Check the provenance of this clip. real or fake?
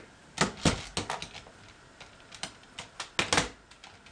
real